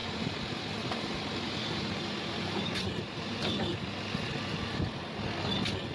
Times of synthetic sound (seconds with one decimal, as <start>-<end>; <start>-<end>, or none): 0.0-3.5